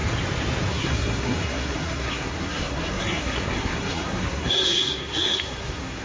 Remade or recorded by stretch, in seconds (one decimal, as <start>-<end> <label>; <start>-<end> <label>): 0.0-0.7 recorded; 0.7-6.0 remade